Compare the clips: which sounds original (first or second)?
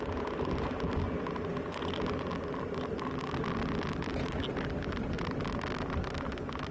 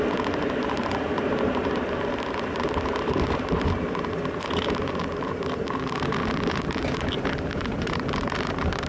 first